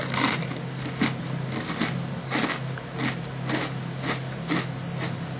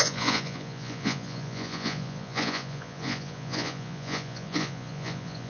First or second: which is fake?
second